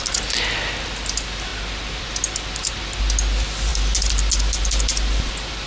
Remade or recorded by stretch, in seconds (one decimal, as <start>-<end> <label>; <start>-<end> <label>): 0.0-5.7 recorded